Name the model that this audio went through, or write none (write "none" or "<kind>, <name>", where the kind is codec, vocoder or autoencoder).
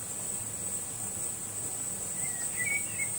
none